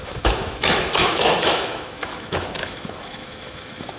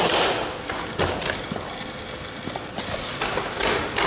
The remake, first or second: first